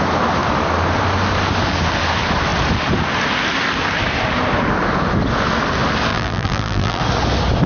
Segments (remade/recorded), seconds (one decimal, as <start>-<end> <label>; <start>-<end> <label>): 0.0-6.1 recorded; 6.1-7.0 remade; 7.0-7.7 recorded